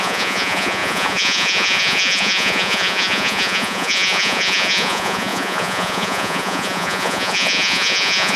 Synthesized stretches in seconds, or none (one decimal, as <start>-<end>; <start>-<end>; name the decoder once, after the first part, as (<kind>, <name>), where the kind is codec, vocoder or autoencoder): 0.0-8.4 (vocoder, Vocos)